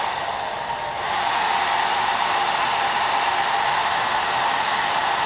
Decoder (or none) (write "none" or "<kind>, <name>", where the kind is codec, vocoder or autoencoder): none